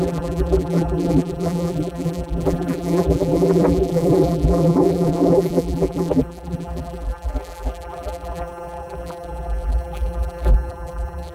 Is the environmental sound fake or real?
fake